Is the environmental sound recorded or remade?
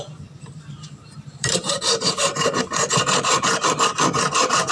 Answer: remade